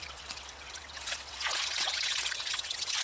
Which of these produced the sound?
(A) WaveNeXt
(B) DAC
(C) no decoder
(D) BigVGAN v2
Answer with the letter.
A